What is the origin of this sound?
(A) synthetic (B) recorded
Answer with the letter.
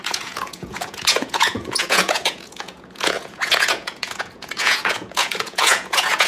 A